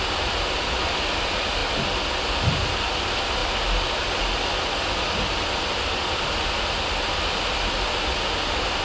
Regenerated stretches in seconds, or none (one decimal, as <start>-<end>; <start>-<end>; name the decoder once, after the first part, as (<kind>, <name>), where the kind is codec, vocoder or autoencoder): none